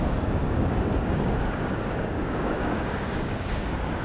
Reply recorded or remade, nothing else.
remade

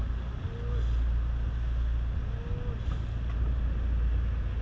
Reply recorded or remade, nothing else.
recorded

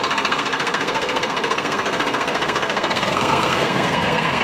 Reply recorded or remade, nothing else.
remade